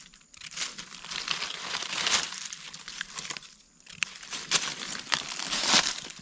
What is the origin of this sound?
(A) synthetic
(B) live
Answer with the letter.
A